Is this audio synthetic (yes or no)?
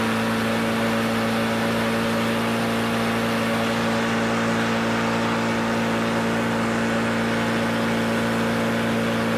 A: no